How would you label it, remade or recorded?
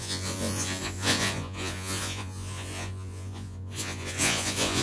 remade